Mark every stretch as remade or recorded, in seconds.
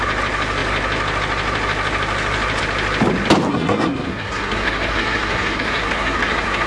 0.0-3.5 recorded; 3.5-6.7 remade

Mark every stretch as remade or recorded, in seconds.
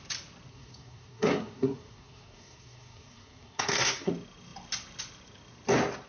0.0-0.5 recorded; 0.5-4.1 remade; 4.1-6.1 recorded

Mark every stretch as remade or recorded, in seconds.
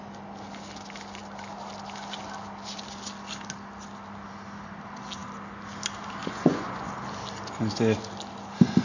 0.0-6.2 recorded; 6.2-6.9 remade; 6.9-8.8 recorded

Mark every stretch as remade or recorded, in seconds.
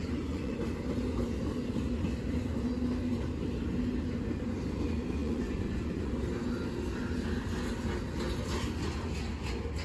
0.0-0.6 remade; 0.6-5.2 recorded; 5.2-6.1 remade; 6.1-9.8 recorded